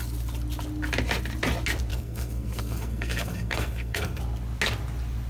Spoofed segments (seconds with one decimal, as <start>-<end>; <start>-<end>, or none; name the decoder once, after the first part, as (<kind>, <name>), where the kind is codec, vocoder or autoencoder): 1.9-4.2 (codec, SNAC)